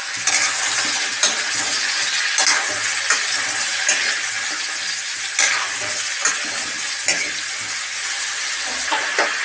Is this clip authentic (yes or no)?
yes